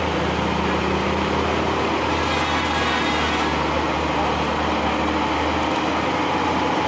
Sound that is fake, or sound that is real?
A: real